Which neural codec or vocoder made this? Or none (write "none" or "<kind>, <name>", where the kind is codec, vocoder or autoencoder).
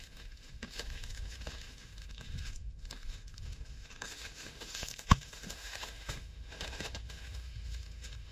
autoencoder, DAC-VAE